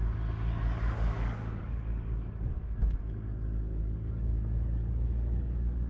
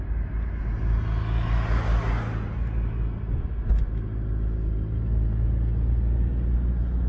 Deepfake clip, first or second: first